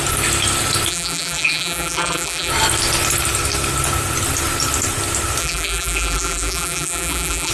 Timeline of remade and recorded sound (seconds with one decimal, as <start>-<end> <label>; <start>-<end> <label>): 0.0-0.9 recorded; 0.9-2.5 remade; 2.5-5.4 recorded; 5.4-7.5 remade